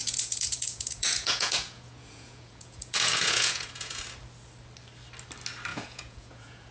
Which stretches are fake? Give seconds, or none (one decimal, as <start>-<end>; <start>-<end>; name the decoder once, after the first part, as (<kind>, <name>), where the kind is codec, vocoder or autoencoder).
0.0-4.0 (vocoder, Vocos); 5.7-6.7